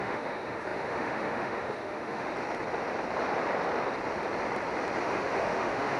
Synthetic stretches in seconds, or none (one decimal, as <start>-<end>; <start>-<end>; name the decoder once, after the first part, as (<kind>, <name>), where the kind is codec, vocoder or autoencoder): 0.0-2.3 (autoencoder, DAC-VAE); 5.0-6.0